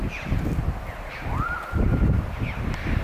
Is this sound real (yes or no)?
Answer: yes